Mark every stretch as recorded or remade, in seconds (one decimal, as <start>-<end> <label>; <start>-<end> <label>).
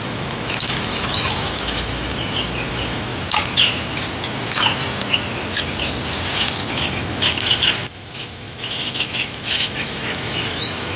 0.0-2.1 remade; 2.1-2.7 recorded; 2.7-3.1 remade; 3.1-6.7 recorded; 6.7-11.0 remade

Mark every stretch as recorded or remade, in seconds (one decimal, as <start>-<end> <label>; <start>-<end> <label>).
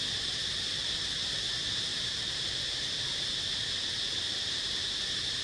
0.0-5.4 recorded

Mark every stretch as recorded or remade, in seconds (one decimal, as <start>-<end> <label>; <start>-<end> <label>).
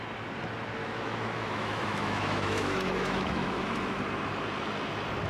0.0-0.8 recorded; 0.8-4.0 remade; 4.0-5.3 recorded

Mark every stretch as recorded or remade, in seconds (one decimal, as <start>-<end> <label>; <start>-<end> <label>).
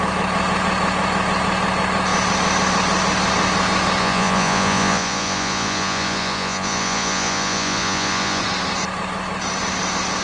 0.0-4.0 recorded; 4.0-8.4 remade; 8.4-10.2 recorded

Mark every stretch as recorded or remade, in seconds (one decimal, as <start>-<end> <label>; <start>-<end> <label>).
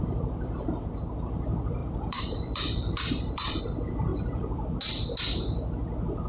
0.0-1.8 recorded; 1.8-3.6 remade; 3.6-4.1 recorded; 4.1-4.7 remade; 4.7-6.3 recorded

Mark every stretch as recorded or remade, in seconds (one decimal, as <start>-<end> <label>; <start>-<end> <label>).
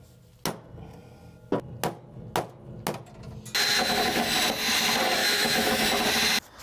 0.0-5.2 recorded; 5.2-5.8 remade; 5.8-6.6 recorded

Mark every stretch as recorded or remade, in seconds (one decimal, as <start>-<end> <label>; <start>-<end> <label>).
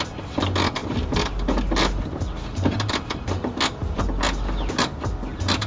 0.0-5.7 recorded